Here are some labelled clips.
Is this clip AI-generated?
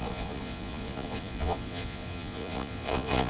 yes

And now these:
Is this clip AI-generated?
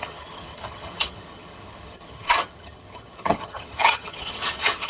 yes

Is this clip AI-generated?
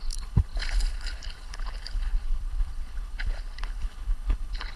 yes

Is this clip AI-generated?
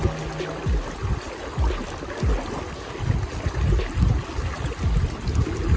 no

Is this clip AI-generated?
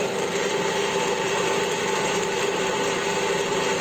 yes